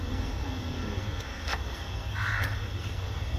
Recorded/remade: remade